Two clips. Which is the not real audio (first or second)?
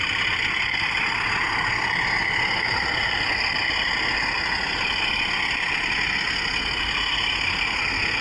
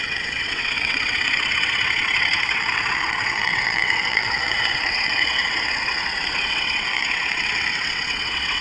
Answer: second